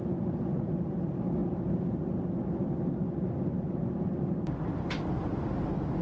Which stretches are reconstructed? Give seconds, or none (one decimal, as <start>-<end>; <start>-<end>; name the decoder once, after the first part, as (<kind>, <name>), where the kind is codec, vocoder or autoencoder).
none